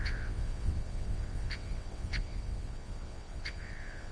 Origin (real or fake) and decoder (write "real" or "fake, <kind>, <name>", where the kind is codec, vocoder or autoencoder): fake, vocoder, WaveNeXt